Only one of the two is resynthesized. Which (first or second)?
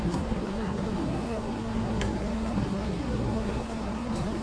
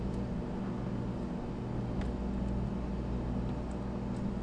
first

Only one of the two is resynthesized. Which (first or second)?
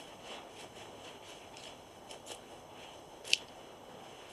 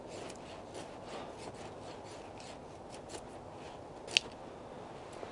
first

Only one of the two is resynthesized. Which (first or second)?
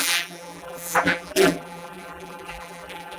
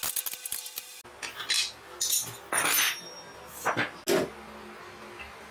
first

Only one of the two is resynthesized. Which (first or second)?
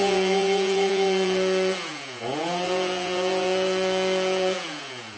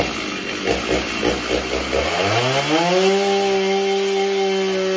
first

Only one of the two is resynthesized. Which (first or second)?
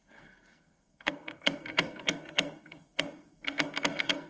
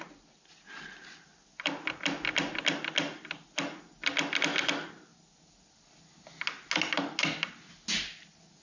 first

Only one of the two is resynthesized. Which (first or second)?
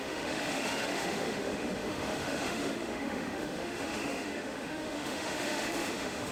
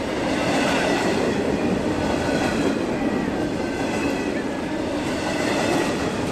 first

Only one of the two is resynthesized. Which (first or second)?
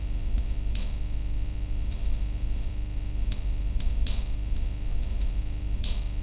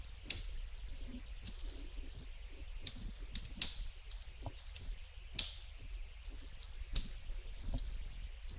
first